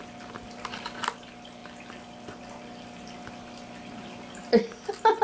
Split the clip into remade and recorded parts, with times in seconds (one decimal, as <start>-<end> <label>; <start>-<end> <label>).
0.0-5.2 recorded